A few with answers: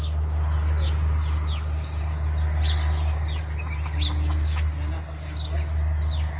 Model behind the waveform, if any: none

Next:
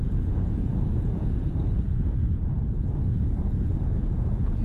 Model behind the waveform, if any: vocoder, Vocos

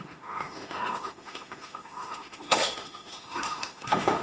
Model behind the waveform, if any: autoencoder, DAC-VAE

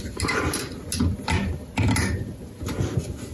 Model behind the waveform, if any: none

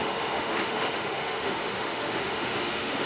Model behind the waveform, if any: autoencoder, DAC-VAE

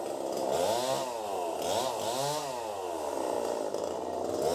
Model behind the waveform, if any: none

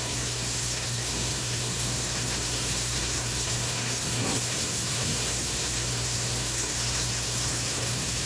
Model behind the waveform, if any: codec, SNAC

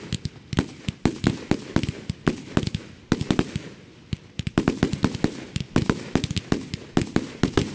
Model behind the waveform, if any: none